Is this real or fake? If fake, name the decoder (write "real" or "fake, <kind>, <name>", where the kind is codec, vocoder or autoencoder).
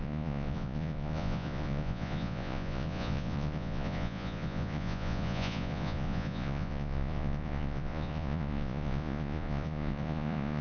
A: fake, vocoder, Vocos